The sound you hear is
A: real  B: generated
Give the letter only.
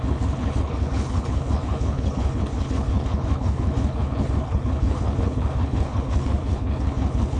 B